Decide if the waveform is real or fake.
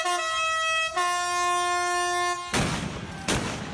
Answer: real